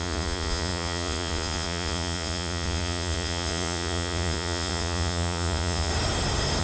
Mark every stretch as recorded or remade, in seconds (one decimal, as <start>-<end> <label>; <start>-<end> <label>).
0.0-5.9 remade; 5.9-6.6 recorded